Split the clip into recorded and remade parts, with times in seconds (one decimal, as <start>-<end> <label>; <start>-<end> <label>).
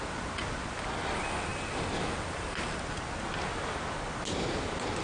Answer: 0.0-5.0 recorded